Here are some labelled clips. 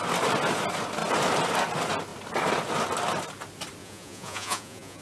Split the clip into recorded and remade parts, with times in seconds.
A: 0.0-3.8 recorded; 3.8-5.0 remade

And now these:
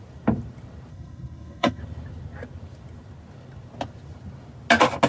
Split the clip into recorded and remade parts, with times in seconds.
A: 0.0-0.9 recorded; 0.9-1.8 remade; 1.8-5.1 recorded

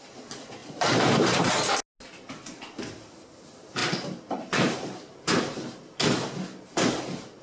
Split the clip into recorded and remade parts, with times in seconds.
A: 0.0-0.6 recorded; 0.6-1.5 remade; 1.5-3.8 recorded; 3.8-5.4 remade; 5.4-7.4 recorded

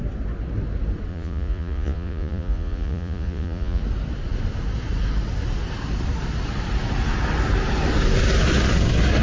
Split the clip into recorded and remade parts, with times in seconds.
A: 0.0-1.1 recorded; 1.1-3.8 remade; 3.8-9.2 recorded

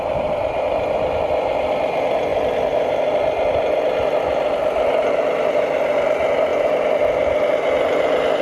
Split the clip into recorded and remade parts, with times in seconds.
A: 0.0-8.4 recorded

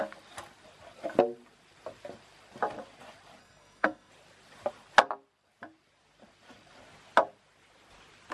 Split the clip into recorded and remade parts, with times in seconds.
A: 0.0-3.4 recorded; 3.4-4.1 remade; 4.1-8.3 recorded